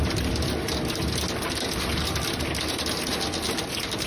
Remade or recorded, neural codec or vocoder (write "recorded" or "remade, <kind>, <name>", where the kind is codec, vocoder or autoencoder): recorded